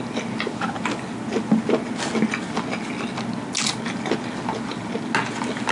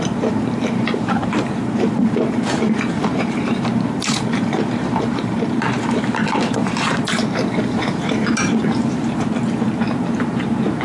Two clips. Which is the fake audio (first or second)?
second